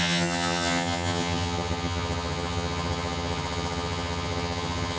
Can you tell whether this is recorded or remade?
remade